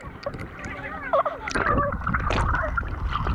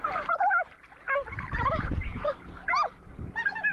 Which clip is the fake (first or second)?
second